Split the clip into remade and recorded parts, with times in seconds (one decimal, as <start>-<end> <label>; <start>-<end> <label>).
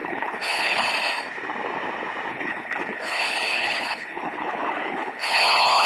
0.0-0.9 remade; 0.9-2.3 recorded; 2.3-5.9 remade